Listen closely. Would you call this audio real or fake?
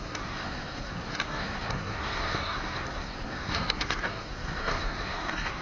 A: fake